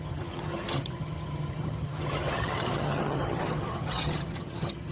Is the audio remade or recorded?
remade